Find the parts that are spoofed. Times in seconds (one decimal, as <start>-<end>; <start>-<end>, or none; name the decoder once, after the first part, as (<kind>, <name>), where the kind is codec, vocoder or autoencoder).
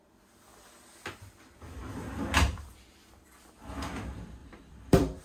4.4-5.2 (vocoder, BigVGAN v2)